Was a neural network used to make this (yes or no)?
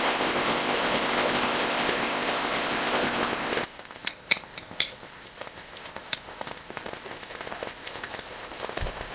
yes